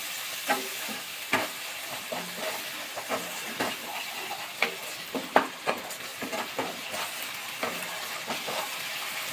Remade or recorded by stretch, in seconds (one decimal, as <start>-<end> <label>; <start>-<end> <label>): 0.0-0.7 recorded; 0.7-1.2 remade; 1.2-9.3 recorded